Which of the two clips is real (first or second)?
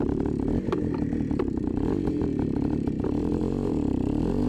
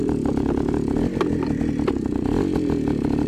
second